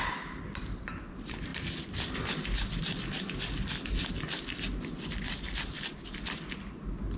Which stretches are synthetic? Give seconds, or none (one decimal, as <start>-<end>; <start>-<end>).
none